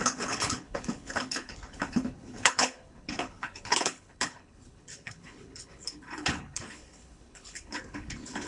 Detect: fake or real fake